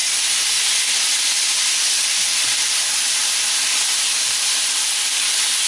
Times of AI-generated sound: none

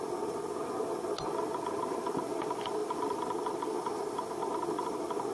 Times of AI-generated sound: none

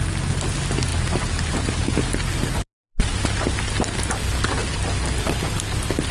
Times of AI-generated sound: none

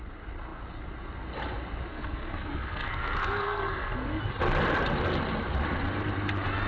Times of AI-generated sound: 1.9-4.2 (codec, SNAC)

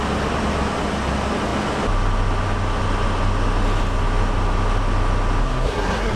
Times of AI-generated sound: 5.4-6.2 (codec, SNAC)